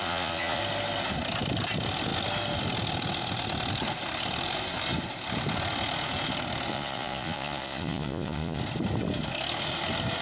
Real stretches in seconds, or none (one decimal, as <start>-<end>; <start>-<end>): 0.6-6.7; 8.6-10.2